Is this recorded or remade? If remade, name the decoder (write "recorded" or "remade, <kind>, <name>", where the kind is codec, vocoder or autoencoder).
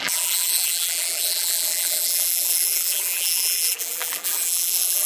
remade, vocoder, BigVGAN v2